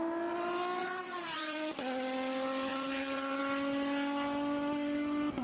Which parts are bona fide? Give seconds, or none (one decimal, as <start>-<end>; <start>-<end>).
0.0-0.8; 1.7-2.7; 3.4-5.4